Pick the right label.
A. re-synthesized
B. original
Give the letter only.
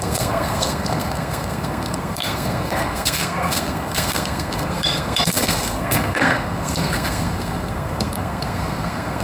A